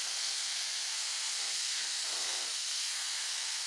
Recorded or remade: remade